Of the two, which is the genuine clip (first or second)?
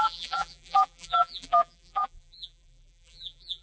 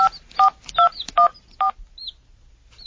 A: second